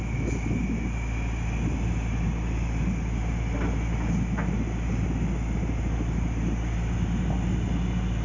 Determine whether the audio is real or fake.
real